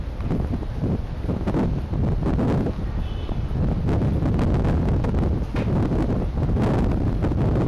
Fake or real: real